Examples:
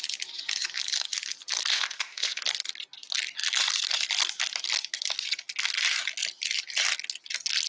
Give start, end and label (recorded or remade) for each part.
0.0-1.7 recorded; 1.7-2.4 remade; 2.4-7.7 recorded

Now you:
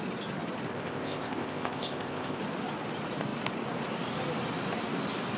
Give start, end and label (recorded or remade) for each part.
0.0-0.7 recorded; 0.7-2.4 remade; 2.4-5.4 recorded

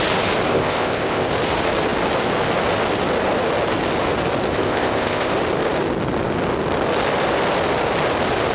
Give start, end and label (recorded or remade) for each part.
0.0-0.5 recorded; 0.5-1.3 remade; 1.3-4.5 recorded; 4.5-5.3 remade; 5.3-8.5 recorded

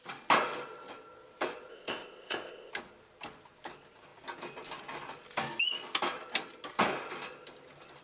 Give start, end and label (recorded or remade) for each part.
0.0-1.7 recorded; 1.7-2.7 remade; 2.7-8.0 recorded

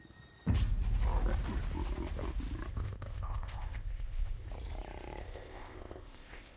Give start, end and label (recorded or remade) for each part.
0.0-2.7 recorded; 2.7-4.5 remade; 4.5-5.2 recorded; 5.2-6.6 remade

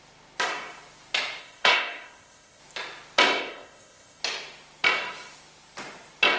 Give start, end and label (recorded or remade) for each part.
0.0-1.4 recorded; 1.4-2.6 remade; 2.6-3.4 recorded; 3.4-4.2 remade; 4.2-6.4 recorded